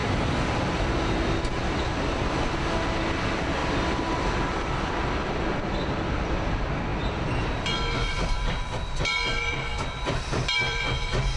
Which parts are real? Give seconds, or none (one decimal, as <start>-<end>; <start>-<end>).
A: 0.7-3.6; 5.4-6.9